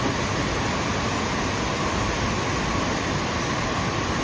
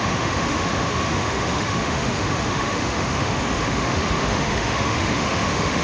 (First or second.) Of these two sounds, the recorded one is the first